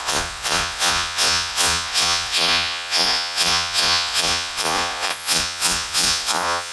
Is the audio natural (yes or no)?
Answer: no